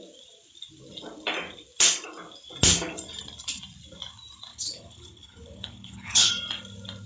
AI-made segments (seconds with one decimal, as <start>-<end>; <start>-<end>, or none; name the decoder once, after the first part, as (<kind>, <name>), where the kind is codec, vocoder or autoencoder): 4.5-6.3 (codec, HILCodec)